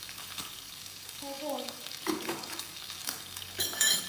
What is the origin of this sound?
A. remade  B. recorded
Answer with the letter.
A